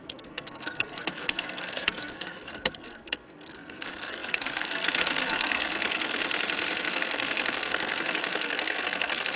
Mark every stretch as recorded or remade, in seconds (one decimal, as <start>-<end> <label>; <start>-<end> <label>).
0.0-6.2 remade; 6.2-6.8 recorded; 6.8-9.4 remade